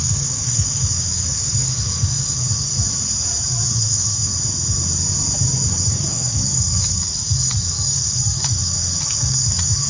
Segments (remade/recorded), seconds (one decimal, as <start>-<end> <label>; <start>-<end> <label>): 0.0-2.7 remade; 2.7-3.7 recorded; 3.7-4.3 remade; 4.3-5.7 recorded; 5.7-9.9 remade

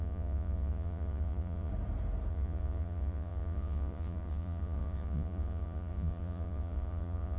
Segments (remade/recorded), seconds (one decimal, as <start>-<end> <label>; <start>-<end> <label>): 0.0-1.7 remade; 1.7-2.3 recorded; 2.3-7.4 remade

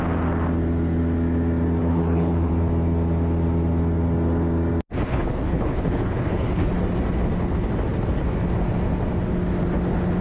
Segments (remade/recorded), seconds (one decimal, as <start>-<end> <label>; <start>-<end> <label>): 0.0-1.8 recorded; 1.8-2.5 remade; 2.5-5.1 recorded; 5.1-6.7 remade; 6.7-10.2 recorded

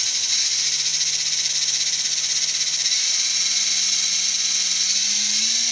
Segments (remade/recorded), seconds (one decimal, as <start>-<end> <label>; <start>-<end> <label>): 0.0-5.7 recorded